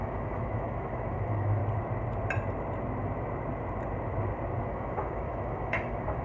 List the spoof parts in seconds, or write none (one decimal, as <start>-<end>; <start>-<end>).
0.0-1.6; 4.6-6.2